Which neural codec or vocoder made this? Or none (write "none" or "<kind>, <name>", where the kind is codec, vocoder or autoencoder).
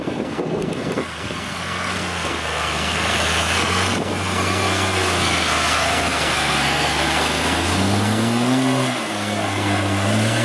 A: codec, SNAC